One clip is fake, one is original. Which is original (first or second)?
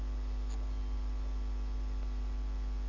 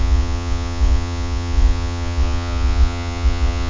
first